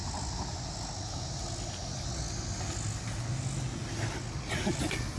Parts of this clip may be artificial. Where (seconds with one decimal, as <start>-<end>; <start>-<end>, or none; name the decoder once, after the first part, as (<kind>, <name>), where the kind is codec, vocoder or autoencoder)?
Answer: none